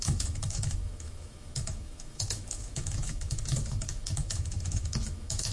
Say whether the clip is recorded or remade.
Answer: remade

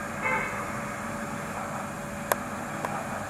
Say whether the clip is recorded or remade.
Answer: recorded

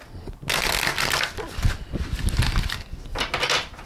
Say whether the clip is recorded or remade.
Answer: recorded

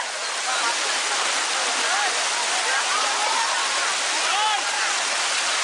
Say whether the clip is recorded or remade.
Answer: recorded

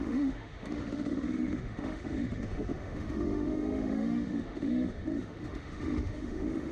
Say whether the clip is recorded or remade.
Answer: remade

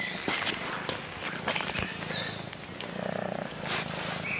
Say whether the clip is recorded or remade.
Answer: recorded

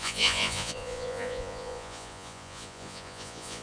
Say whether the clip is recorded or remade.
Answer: remade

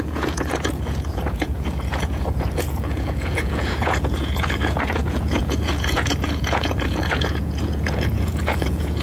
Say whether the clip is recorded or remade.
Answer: remade